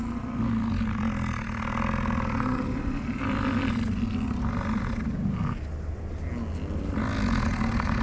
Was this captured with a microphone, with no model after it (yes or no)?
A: yes